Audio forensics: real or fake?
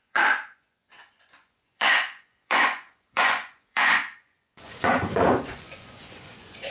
fake